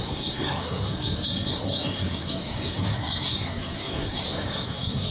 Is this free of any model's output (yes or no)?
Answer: no